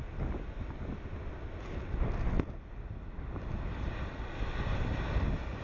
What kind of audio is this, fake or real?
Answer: real